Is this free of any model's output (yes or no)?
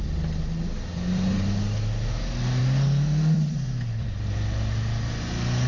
yes